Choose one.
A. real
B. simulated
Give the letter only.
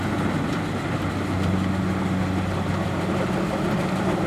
A